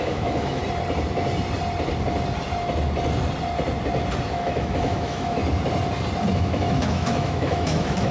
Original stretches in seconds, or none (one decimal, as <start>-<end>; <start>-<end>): 0.6-4.3; 5.4-6.3